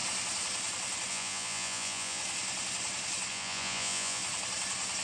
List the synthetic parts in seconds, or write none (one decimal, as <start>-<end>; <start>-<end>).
1.1-2.2; 3.3-4.2